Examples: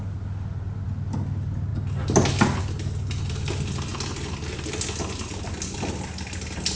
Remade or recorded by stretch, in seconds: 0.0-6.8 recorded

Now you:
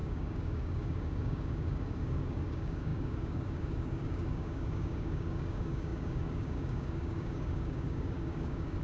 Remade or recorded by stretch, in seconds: 0.0-8.8 remade

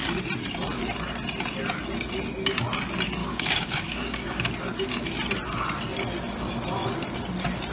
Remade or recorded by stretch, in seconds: 0.0-3.2 recorded; 3.2-4.5 remade; 4.5-7.7 recorded

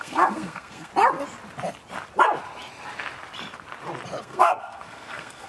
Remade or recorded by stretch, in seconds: 0.0-0.9 remade; 0.9-4.2 recorded; 4.2-5.5 remade

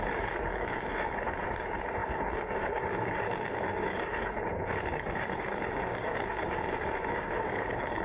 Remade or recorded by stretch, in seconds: 0.0-8.0 remade